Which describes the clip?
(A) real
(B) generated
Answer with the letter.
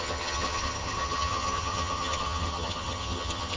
B